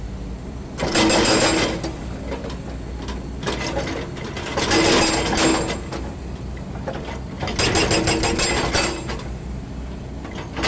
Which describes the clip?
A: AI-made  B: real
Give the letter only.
B